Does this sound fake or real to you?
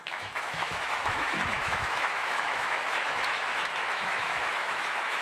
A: fake